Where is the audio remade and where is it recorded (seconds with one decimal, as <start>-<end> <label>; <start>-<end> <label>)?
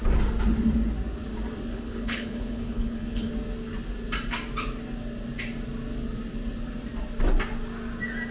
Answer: 0.0-1.7 recorded; 1.7-3.3 remade; 3.3-8.3 recorded